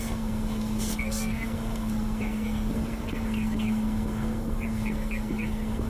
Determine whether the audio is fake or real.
fake